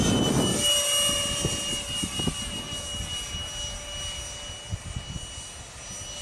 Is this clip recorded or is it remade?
recorded